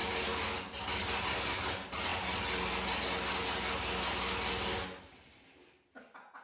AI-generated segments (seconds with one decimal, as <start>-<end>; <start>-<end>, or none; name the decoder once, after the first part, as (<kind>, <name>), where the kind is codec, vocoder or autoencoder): none